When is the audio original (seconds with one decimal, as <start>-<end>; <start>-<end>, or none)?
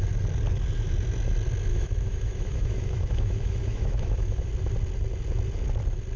0.0-1.7; 4.5-6.2